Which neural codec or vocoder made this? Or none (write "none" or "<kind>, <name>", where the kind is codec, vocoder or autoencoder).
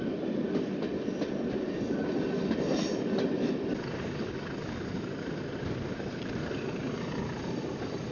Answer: none